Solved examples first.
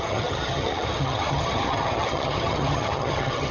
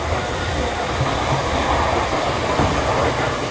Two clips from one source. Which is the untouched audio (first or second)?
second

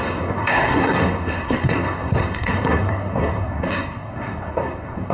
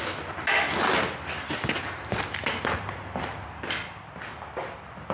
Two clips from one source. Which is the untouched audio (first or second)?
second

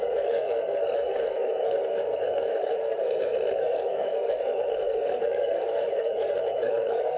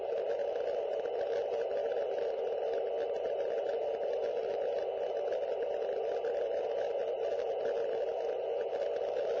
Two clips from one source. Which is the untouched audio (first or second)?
second